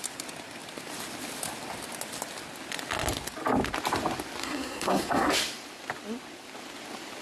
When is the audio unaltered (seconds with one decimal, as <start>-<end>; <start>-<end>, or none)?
0.0-4.4; 5.3-7.2